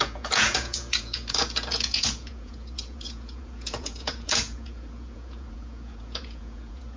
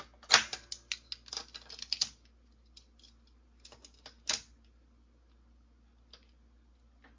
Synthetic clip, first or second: first